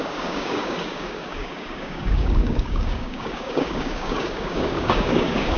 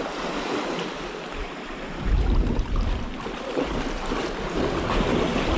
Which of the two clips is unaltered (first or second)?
second